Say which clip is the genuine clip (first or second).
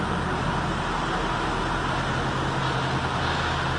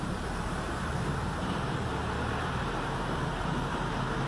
first